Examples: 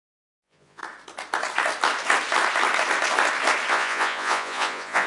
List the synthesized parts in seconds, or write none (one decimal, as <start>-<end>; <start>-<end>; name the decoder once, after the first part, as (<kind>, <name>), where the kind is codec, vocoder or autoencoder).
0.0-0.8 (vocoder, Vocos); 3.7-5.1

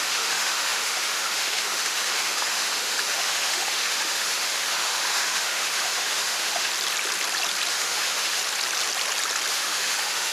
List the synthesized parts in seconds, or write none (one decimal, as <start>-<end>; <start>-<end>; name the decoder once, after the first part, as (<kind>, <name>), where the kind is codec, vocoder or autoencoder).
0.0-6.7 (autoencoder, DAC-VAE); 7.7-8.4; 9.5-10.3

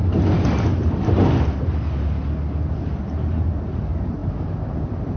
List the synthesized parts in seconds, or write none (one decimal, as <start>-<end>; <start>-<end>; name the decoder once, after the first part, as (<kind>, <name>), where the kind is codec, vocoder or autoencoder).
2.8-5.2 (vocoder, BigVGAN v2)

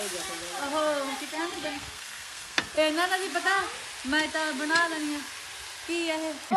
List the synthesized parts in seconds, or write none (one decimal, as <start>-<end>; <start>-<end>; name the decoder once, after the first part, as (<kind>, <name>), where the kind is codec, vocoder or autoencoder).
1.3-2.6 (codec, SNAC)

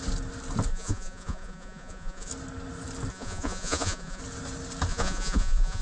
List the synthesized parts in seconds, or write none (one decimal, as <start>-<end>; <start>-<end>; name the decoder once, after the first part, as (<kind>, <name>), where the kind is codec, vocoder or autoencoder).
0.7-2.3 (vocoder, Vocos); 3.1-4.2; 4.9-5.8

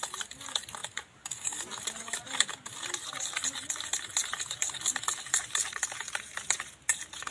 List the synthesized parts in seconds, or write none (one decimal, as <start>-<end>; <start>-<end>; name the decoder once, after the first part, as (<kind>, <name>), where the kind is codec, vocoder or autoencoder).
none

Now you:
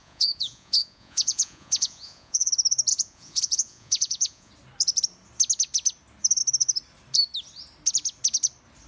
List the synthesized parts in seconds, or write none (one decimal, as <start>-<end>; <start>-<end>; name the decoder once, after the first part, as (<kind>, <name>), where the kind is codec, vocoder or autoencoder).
0.0-2.5 (vocoder, Vocos); 2.9-4.5